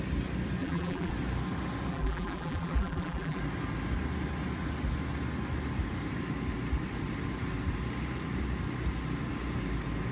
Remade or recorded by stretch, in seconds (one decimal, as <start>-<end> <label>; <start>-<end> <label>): 0.0-0.6 recorded; 0.6-1.1 remade; 1.1-1.9 recorded; 1.9-3.4 remade; 3.4-10.1 recorded